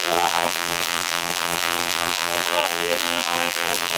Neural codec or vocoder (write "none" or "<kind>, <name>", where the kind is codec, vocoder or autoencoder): vocoder, BigVGAN v2